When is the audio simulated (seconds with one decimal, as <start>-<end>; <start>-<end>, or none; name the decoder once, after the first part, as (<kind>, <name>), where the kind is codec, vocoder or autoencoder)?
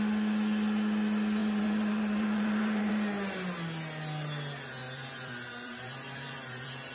1.4-2.9 (vocoder, BigVGAN v2); 4.8-6.9